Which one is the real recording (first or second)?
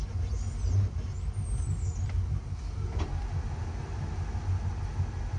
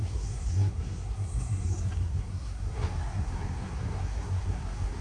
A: first